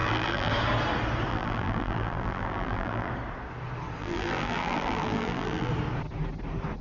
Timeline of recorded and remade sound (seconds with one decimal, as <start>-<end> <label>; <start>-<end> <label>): 0.0-0.5 remade; 0.5-1.3 recorded; 1.3-3.1 remade; 3.1-4.0 recorded; 4.0-5.7 remade; 5.7-6.8 recorded